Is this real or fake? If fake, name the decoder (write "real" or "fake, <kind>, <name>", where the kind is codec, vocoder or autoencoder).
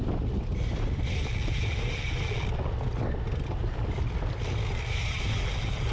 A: real